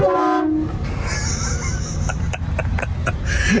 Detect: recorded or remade recorded